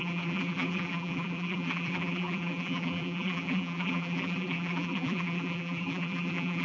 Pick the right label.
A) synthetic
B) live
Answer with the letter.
A